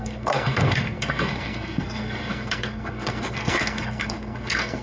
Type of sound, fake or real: fake